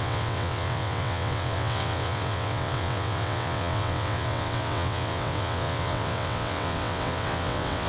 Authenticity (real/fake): fake